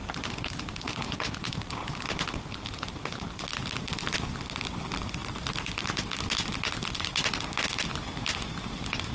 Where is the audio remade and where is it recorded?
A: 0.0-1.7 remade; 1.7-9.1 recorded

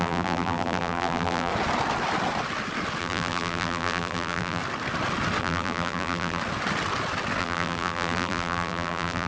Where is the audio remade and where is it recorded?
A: 0.0-1.5 remade; 1.5-3.0 recorded; 3.0-4.6 remade; 4.6-5.4 recorded; 5.4-6.4 remade; 6.4-7.4 recorded; 7.4-9.3 remade

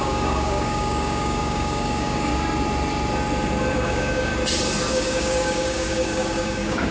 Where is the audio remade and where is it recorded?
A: 0.0-2.3 remade; 2.3-3.7 recorded; 3.7-4.3 remade; 4.3-4.9 recorded; 4.9-6.9 remade

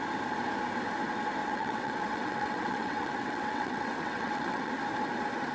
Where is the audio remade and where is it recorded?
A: 0.0-1.4 recorded; 1.4-4.7 remade; 4.7-5.5 recorded

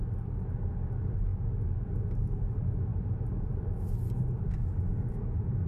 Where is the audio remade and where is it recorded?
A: 0.0-5.7 recorded

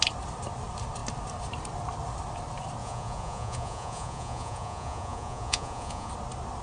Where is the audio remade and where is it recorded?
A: 0.0-2.8 recorded; 2.8-6.1 remade; 6.1-6.6 recorded